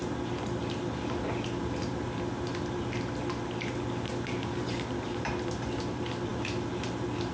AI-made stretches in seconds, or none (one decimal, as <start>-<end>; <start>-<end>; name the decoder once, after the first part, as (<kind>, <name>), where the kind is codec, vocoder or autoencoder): none